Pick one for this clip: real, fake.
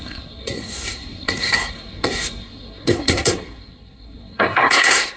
fake